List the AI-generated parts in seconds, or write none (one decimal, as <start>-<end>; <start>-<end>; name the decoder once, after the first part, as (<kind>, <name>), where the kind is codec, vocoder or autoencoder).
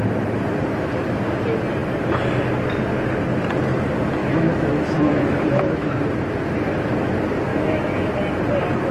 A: 4.2-5.9 (autoencoder, DAC-VAE); 7.5-8.1